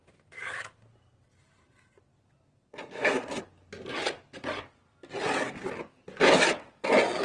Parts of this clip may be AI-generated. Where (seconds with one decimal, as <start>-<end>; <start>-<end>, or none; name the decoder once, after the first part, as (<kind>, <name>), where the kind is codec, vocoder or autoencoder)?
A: 2.7-3.4 (codec, SNAC)